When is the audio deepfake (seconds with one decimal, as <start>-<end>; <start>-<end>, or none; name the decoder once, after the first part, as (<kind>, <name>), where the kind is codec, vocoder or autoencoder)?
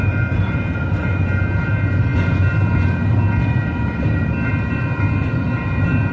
none